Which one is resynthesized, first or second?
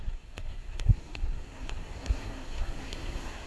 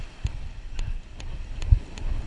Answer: first